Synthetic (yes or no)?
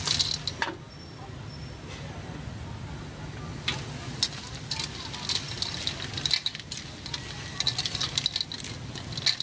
no